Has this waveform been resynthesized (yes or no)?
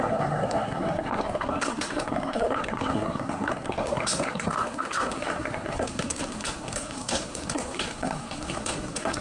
yes